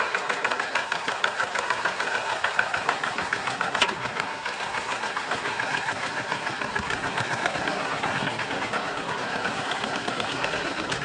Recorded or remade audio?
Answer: remade